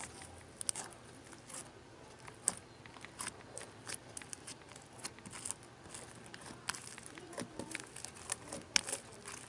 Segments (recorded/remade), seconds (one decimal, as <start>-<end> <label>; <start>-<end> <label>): 0.0-9.5 recorded